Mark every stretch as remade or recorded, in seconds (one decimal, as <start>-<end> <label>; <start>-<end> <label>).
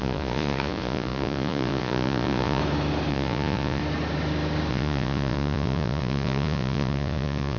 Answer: 0.0-2.6 remade; 2.6-3.1 recorded; 3.1-3.8 remade; 3.8-4.7 recorded; 4.7-7.6 remade